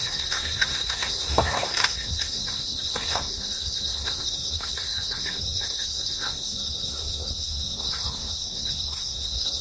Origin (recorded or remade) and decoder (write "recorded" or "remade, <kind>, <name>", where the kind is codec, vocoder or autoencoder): remade, codec, SNAC